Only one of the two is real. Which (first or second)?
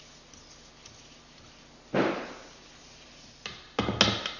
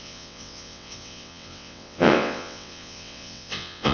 first